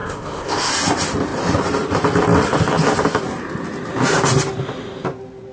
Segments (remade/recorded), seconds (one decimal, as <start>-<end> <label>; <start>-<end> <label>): 0.0-0.7 remade; 0.7-5.5 recorded